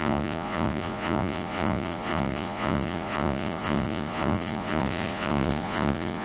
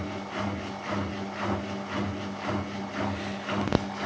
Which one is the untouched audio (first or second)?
second